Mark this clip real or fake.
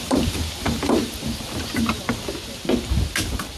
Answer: fake